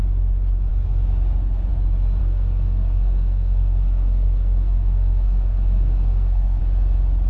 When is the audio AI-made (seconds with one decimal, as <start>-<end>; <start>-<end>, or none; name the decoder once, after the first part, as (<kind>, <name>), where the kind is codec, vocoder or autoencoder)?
2.2-6.6 (codec, SNAC)